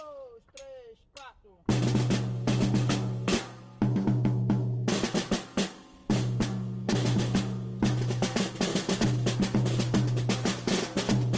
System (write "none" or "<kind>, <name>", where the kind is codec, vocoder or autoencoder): none